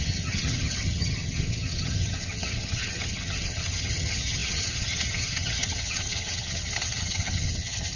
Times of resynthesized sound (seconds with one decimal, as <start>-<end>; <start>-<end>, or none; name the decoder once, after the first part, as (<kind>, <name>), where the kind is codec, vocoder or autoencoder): 0.0-8.0 (vocoder, HiFi-GAN)